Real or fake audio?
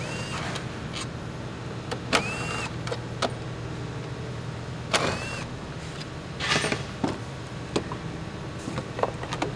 real